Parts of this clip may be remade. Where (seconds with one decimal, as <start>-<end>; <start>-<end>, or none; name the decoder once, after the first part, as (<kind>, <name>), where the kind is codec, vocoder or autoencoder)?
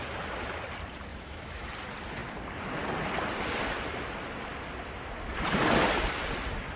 1.1-1.7 (autoencoder, DAC-VAE)